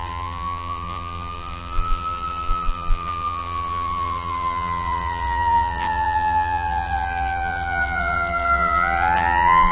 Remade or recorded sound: remade